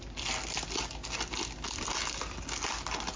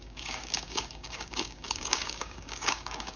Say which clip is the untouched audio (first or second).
first